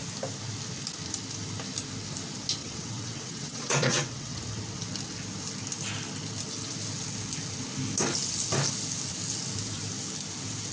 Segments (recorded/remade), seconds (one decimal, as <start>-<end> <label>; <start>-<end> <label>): 0.0-2.6 recorded; 2.6-4.4 remade; 4.4-10.7 recorded